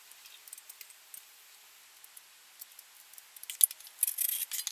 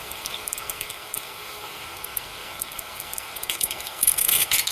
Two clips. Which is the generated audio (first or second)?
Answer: second